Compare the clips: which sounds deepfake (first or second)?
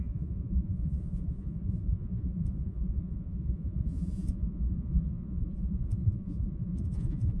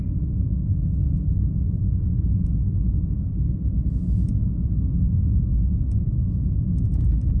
first